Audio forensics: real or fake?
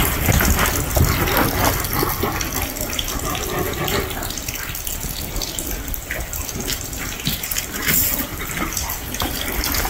real